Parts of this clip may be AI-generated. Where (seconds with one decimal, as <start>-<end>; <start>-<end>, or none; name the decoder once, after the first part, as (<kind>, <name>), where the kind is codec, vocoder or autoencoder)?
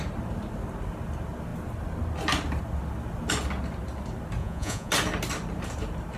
4.4-4.9 (vocoder, Vocos)